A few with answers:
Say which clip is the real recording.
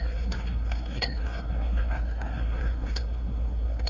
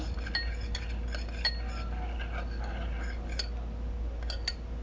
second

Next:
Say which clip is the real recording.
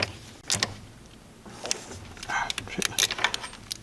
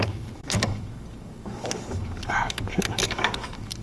first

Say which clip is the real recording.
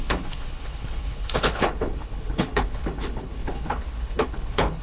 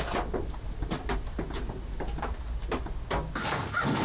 second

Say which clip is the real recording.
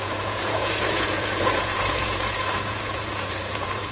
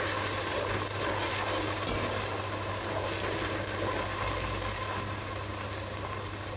second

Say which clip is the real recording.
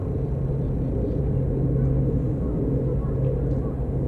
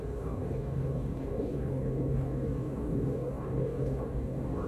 first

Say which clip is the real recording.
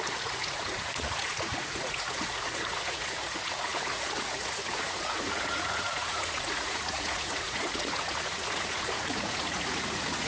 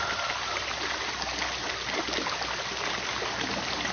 second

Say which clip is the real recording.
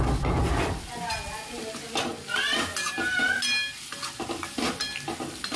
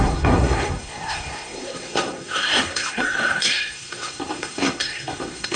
first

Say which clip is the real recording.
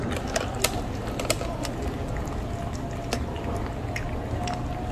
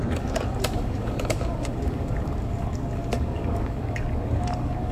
first